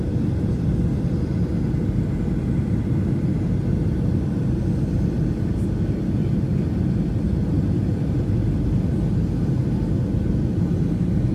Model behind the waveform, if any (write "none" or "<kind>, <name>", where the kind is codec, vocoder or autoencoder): none